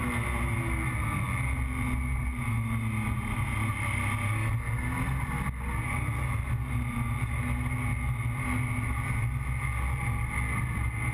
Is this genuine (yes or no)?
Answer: yes